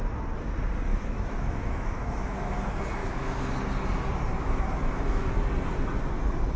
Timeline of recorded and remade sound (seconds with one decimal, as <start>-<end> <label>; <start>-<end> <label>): 0.0-0.9 recorded; 0.9-2.6 remade; 2.6-3.0 recorded; 3.0-3.5 remade; 3.5-4.3 recorded; 4.3-5.4 remade; 5.4-6.6 recorded